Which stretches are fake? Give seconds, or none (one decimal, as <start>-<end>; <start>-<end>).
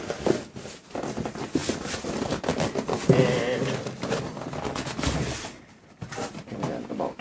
1.6-2.1